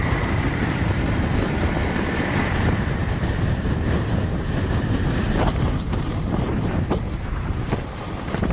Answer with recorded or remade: remade